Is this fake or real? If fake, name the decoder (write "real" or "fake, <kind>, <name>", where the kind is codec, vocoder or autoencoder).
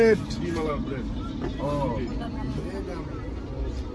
real